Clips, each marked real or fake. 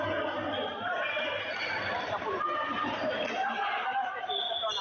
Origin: real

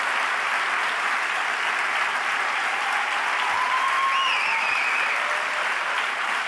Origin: real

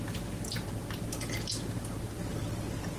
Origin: real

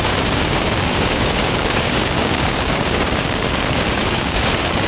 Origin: fake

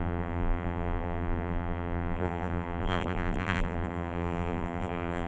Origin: fake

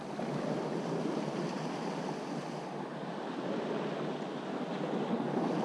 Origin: real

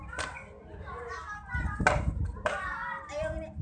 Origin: real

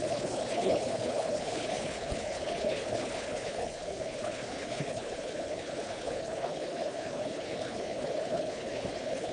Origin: fake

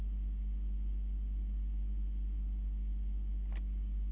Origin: real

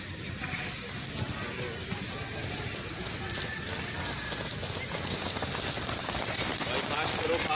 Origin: real